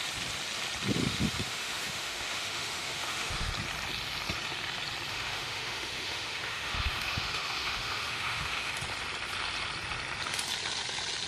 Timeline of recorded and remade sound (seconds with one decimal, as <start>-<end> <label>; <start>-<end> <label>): 0.0-1.0 recorded; 1.0-3.5 remade; 3.5-5.1 recorded; 5.1-8.7 remade; 8.7-11.3 recorded